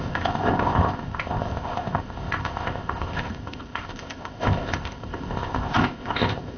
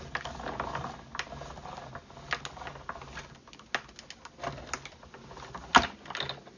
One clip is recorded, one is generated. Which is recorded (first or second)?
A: second